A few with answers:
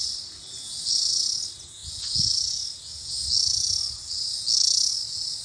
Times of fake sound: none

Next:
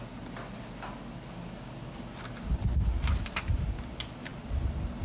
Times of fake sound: none